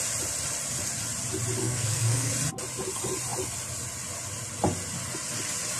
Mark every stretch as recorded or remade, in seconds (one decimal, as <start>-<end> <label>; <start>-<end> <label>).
0.0-1.6 recorded; 1.6-2.3 remade; 2.3-5.8 recorded